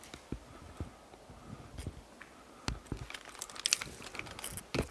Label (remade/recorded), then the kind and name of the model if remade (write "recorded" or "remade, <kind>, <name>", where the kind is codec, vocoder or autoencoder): recorded